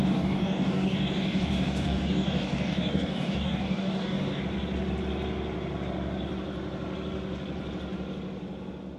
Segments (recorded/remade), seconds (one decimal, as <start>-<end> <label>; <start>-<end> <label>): 0.0-4.4 remade; 4.4-9.0 recorded